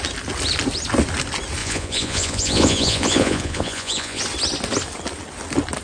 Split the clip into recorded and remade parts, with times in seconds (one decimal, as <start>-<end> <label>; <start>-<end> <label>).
0.0-1.6 recorded; 1.6-4.2 remade; 4.2-5.8 recorded